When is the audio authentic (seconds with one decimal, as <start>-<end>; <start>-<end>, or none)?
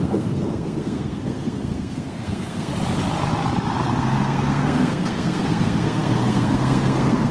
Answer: 2.7-4.0